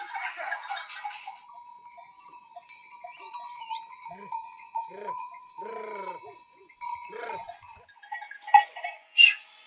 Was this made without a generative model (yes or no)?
no